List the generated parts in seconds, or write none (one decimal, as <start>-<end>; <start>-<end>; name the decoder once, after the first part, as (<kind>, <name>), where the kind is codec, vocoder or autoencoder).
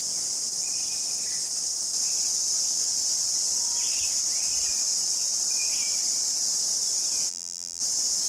7.3-7.8 (vocoder, BigVGAN v2)